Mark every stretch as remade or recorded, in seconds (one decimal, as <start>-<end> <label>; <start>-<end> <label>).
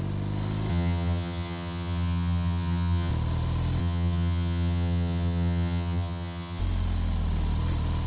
0.0-0.7 recorded; 0.7-3.1 remade; 3.1-3.8 recorded; 3.8-6.6 remade; 6.6-8.1 recorded